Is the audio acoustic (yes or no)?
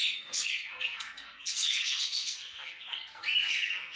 no